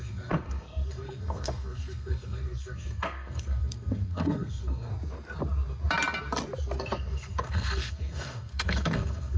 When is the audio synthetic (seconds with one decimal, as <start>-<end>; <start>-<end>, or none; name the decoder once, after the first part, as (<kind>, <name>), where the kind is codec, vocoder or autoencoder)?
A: 0.0-4.9 (codec, SNAC); 6.8-9.4